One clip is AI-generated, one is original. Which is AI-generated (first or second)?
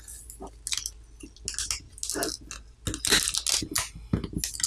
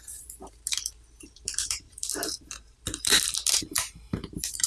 second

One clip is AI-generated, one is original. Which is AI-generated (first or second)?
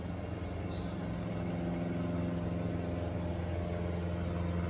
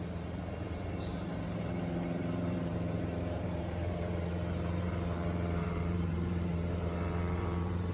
second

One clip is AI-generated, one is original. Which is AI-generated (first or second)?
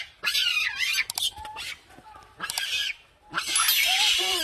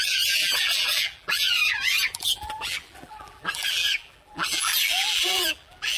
second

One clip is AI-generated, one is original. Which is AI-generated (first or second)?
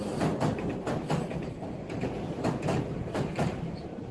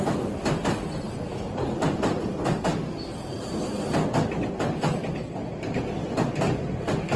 first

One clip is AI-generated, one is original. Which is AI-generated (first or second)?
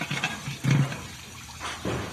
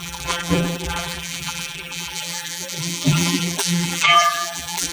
second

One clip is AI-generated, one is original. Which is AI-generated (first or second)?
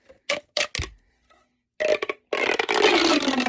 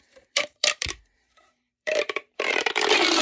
second